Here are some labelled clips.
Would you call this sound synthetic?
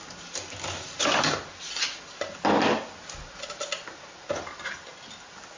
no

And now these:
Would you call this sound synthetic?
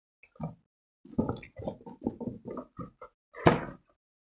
no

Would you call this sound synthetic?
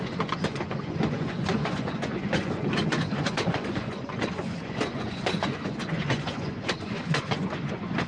yes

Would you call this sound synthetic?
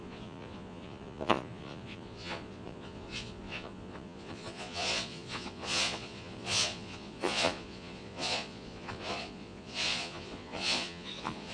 yes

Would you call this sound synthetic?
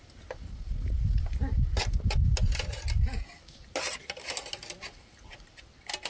no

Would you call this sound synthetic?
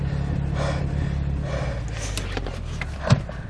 no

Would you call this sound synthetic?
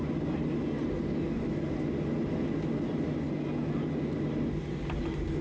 no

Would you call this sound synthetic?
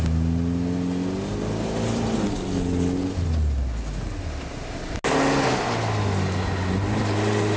no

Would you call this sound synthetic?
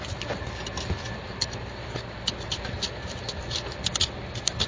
no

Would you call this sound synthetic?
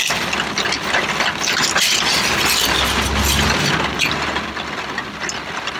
no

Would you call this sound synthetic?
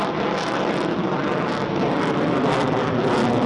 no